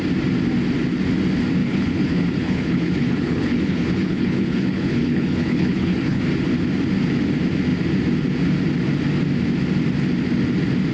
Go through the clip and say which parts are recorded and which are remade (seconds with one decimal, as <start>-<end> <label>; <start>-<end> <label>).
0.0-1.6 recorded; 1.6-6.2 remade; 6.2-10.9 recorded